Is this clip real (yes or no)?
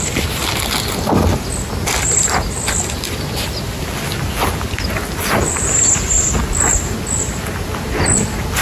yes